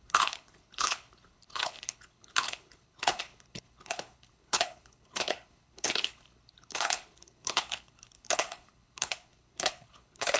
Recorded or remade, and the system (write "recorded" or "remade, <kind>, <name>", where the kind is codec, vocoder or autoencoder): remade, codec, HILCodec